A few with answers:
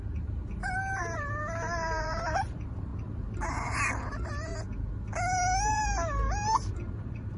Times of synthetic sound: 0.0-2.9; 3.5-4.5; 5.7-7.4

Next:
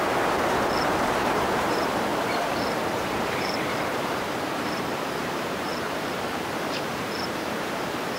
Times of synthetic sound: 0.0-8.2

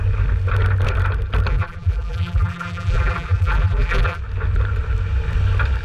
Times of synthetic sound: 1.5-4.2

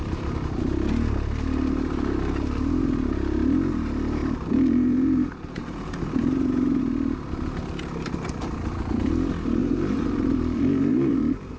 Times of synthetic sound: 4.2-6.8; 9.6-11.6

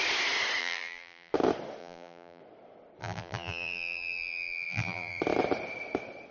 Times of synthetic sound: 0.6-1.3; 1.8-2.4; 3.0-5.2

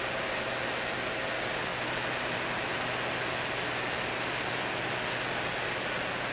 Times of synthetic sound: none